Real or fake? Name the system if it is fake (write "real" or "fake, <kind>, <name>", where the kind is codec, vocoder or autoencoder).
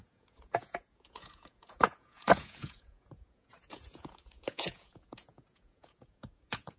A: fake, vocoder, Vocos